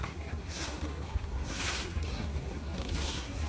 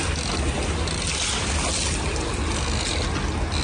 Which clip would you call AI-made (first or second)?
first